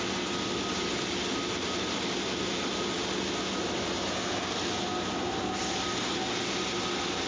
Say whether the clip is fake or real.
real